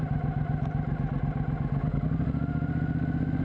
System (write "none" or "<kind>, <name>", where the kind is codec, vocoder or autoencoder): none